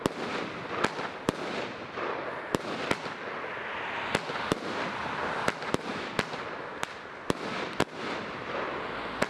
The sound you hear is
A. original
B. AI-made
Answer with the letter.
A